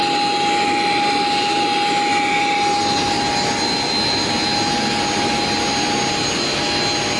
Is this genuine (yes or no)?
yes